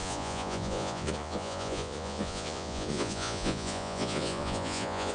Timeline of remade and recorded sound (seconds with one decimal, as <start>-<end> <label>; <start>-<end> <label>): 0.0-5.1 remade